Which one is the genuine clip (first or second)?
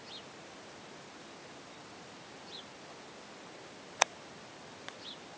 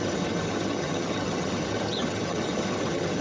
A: first